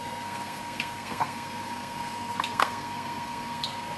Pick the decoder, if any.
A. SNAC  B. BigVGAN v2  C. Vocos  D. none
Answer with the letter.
A